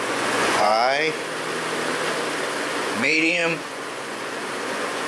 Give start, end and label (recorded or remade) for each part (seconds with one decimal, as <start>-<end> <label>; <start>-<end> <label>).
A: 0.0-0.7 remade; 0.7-2.6 recorded; 2.6-5.1 remade